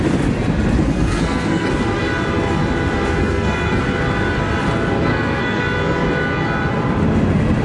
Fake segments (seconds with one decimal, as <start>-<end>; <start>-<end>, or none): 0.8-1.7; 3.2-3.8; 5.1-5.6